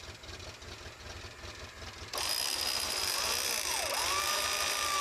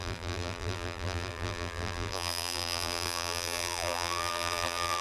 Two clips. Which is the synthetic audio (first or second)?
second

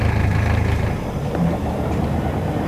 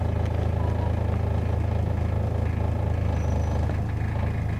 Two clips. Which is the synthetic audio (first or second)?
first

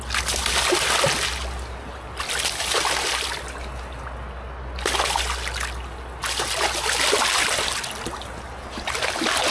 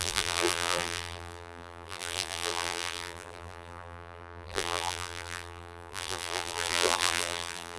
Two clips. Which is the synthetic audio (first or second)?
second